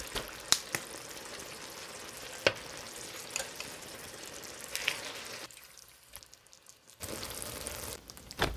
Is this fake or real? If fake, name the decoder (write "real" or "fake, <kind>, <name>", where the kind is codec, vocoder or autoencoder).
real